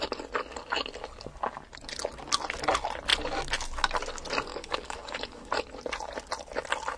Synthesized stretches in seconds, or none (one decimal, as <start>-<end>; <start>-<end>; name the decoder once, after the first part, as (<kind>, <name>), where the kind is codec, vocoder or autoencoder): 4.5-5.5 (codec, DAC)